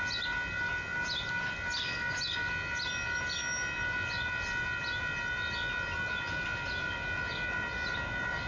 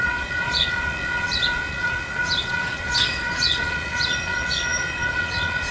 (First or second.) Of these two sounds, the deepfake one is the second